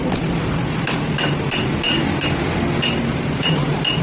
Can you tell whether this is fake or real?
real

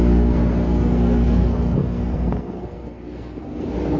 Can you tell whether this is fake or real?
fake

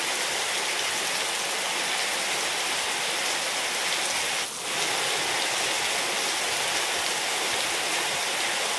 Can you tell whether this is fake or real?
real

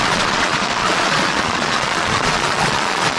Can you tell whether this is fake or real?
fake